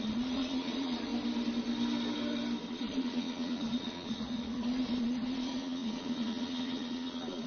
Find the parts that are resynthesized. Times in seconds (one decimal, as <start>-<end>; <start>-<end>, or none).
0.0-1.1; 2.7-7.5